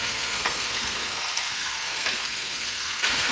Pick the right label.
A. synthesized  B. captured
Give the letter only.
A